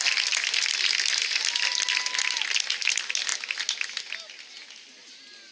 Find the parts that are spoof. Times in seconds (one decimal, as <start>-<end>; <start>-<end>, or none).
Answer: none